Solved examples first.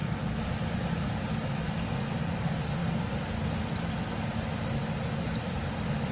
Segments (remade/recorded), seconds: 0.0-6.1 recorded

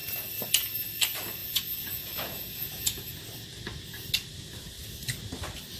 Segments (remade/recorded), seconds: 0.0-1.4 recorded; 1.4-3.1 remade; 3.1-5.8 recorded

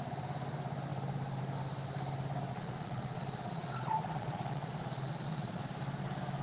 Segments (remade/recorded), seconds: 0.0-2.5 recorded; 2.5-5.6 remade; 5.6-6.4 recorded